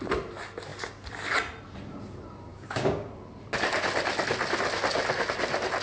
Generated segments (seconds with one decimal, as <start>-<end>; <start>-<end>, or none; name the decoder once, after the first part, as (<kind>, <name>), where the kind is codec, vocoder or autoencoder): 2.5-3.1 (codec, DAC)